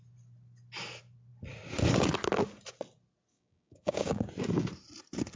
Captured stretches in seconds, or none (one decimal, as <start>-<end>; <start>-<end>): 0.0-3.3; 4.3-5.4